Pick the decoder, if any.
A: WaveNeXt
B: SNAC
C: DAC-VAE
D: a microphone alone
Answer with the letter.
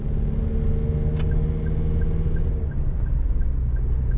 D